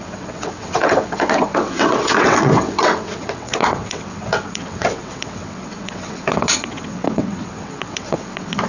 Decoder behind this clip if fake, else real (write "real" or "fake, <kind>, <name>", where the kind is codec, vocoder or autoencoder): fake, vocoder, WaveNeXt